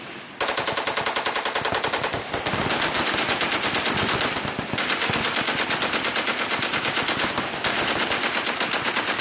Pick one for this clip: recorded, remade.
recorded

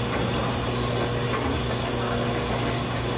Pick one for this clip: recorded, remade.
recorded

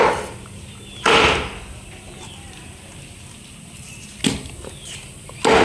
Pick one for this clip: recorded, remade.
recorded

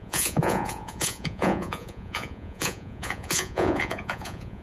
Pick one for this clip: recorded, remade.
remade